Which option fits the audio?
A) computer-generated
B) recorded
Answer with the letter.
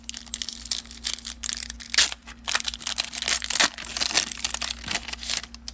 B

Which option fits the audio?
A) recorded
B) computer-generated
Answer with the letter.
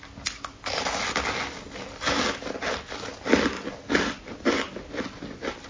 A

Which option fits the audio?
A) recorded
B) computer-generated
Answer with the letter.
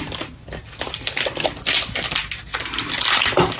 A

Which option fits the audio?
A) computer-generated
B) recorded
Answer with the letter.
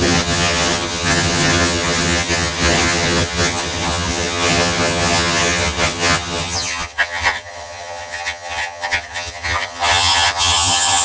A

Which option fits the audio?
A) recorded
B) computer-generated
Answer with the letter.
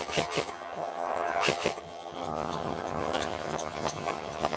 B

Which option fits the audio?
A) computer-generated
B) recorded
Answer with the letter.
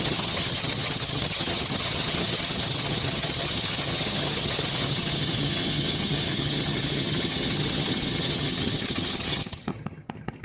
A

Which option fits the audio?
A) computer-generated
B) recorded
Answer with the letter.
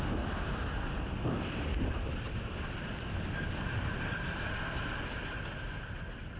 B